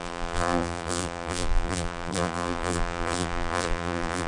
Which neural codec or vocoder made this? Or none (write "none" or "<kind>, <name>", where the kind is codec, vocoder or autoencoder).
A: vocoder, BigVGAN v2